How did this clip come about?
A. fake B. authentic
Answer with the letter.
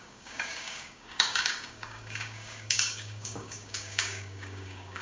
A